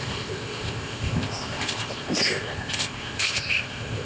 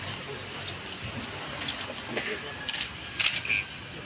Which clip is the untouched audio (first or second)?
second